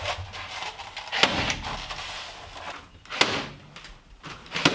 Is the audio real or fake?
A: real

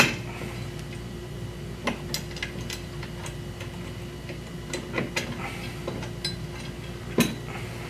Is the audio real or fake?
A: real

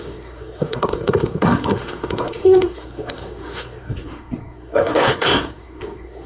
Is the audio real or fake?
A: fake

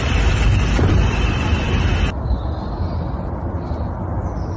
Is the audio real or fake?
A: real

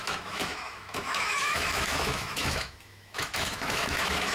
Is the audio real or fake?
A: fake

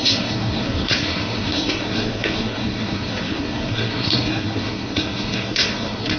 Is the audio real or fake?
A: fake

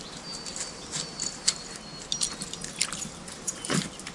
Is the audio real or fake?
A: real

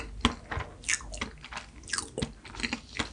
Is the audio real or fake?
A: real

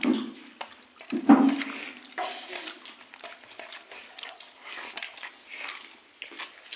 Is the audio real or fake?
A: real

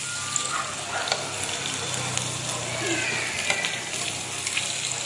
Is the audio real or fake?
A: real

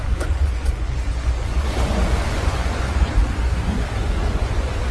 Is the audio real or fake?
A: fake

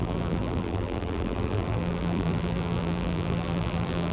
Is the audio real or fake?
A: fake